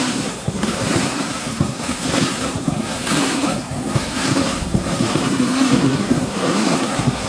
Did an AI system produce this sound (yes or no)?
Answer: yes